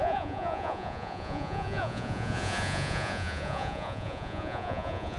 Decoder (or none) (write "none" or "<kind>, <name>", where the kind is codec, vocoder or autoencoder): vocoder, Vocos